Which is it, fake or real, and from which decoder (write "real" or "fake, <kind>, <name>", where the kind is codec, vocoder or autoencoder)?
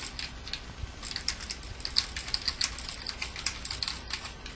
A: real